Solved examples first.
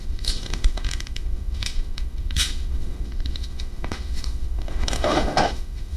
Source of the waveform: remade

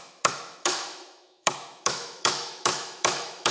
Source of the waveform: remade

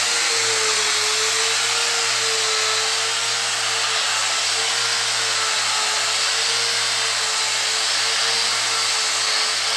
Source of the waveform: recorded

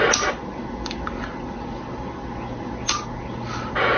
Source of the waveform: recorded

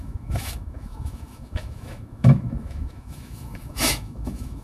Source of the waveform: remade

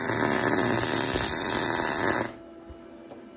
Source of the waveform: recorded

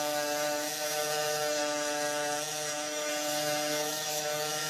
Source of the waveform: remade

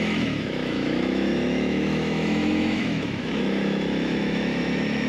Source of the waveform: remade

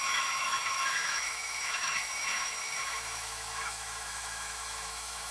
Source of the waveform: remade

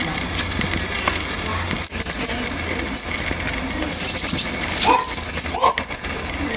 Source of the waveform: recorded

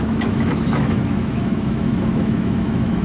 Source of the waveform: remade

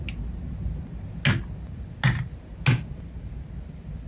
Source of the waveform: recorded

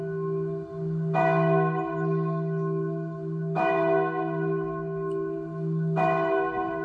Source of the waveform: remade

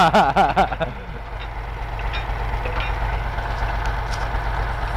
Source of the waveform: recorded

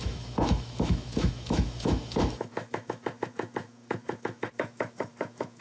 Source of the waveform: remade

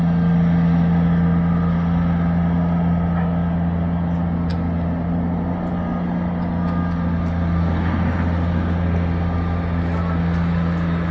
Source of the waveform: recorded